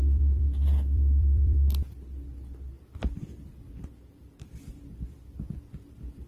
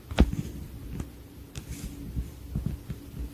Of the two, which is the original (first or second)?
second